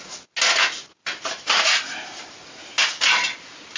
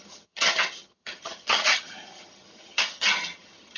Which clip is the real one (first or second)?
first